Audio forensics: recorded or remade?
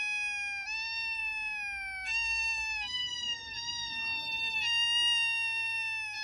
recorded